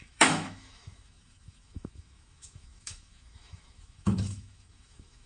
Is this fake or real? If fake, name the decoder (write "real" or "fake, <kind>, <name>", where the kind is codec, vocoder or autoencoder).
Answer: fake, autoencoder, DAC-VAE